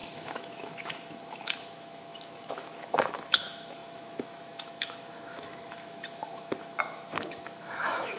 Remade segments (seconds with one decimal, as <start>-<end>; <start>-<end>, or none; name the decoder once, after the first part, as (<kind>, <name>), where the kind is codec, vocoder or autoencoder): 0.0-8.2 (autoencoder, DAC-VAE)